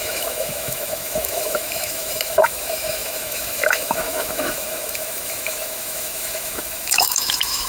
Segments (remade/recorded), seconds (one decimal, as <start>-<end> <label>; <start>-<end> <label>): 0.0-7.7 remade